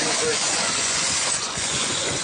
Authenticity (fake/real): fake